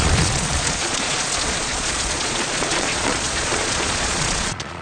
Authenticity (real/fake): fake